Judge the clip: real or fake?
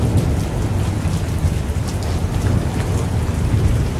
real